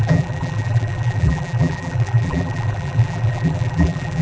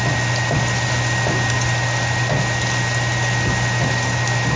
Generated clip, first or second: first